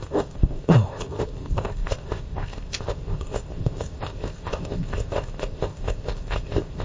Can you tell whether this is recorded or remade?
remade